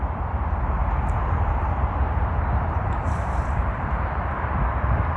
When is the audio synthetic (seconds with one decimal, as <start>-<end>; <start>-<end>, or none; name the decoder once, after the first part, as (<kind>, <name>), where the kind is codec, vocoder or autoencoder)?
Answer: 0.8-3.9 (vocoder, BigVGAN v2)